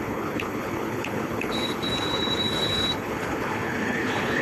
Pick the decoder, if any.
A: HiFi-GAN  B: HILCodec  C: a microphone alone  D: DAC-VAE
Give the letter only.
B